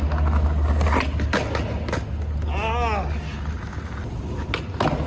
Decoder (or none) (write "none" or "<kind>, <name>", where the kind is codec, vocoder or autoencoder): none